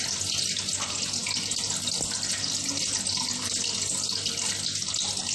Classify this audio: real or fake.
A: real